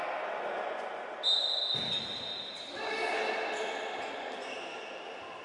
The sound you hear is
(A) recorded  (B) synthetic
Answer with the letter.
A